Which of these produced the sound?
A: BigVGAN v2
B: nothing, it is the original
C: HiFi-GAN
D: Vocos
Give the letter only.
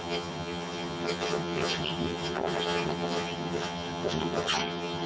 C